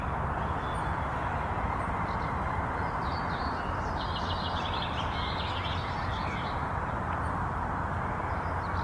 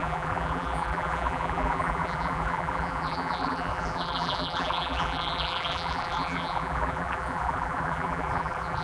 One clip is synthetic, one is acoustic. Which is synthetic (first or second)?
second